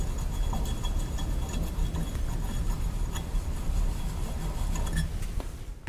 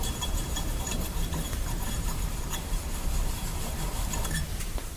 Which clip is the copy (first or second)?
second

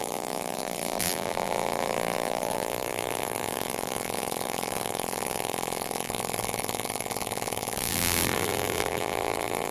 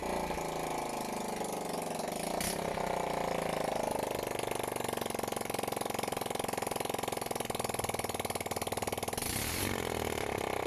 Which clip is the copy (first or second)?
first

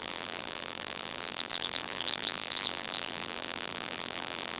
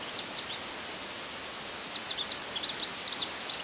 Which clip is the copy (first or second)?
first